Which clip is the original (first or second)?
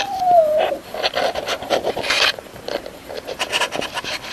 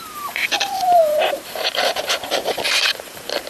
first